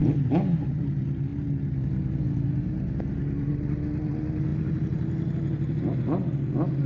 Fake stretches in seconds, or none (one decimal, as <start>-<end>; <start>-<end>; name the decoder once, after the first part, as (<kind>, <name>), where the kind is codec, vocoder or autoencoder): none